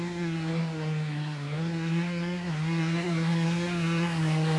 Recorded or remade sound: remade